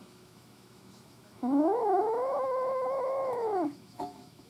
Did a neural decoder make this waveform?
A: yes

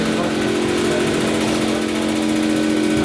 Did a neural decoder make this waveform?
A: no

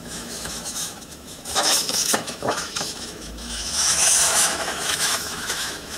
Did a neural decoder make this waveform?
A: yes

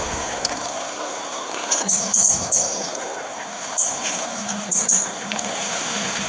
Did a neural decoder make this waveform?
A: yes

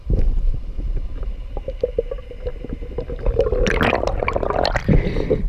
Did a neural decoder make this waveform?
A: no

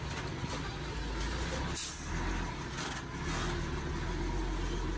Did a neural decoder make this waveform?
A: no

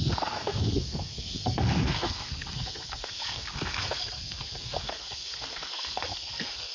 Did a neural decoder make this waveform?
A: yes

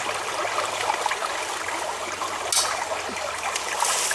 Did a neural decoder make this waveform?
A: no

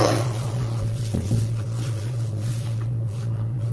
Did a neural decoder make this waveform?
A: yes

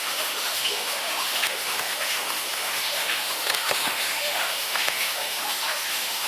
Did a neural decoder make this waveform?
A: yes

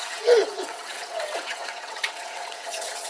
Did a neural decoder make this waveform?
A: yes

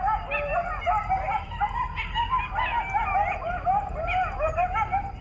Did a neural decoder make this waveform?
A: no